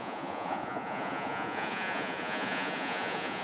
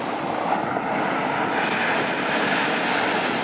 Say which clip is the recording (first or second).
second